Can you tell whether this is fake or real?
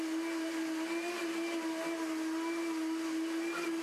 real